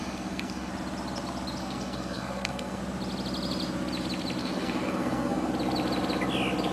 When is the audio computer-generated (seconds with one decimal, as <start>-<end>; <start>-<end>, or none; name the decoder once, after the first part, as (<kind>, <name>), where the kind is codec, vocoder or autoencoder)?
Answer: 0.0-0.7 (codec, SNAC); 1.6-2.8; 4.4-5.5

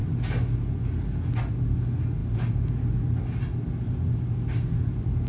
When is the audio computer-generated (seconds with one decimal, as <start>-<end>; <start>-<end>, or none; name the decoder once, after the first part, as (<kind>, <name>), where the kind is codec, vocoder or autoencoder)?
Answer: none

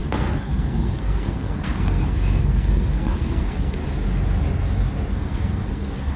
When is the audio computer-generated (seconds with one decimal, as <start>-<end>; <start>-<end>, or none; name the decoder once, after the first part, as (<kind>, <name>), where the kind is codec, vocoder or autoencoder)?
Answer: 0.0-3.8 (codec, SNAC); 5.1-6.2